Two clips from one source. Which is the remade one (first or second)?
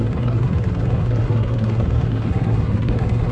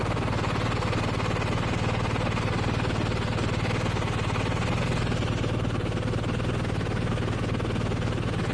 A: first